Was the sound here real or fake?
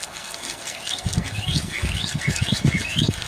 fake